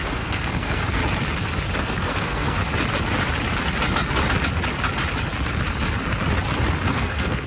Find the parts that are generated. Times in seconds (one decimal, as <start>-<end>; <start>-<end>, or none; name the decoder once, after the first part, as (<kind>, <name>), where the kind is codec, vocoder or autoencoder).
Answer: 0.0-1.0 (codec, SNAC); 1.8-2.6; 6.9-7.5